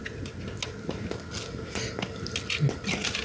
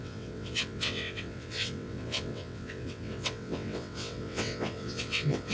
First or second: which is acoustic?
first